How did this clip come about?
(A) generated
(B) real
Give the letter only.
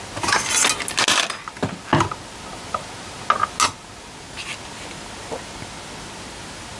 B